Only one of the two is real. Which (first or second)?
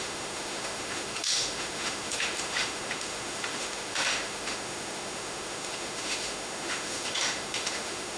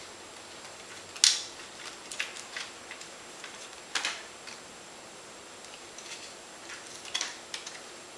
second